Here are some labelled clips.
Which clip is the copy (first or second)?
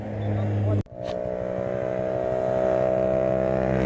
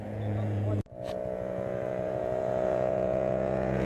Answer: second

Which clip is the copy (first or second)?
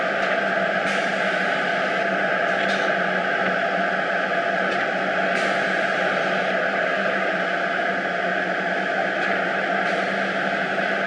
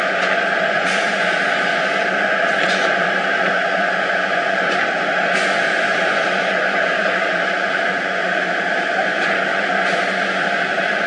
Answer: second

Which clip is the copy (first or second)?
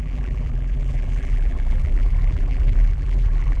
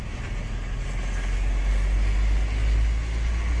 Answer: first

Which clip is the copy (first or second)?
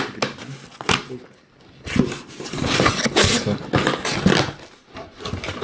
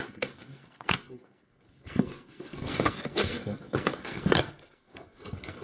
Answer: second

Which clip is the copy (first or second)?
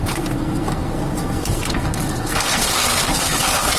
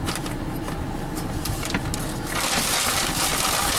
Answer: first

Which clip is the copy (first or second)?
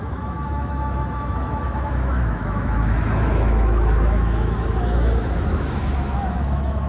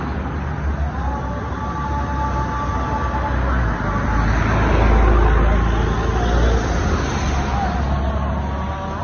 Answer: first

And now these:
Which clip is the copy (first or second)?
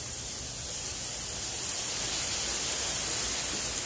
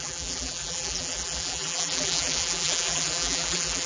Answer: second